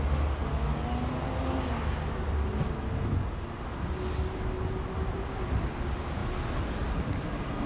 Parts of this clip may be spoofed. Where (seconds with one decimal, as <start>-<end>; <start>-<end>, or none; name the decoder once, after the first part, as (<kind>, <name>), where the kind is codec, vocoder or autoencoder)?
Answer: none